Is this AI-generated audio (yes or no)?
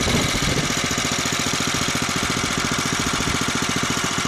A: no